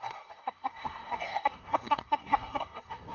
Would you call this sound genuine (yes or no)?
no